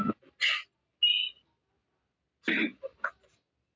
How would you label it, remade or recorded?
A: recorded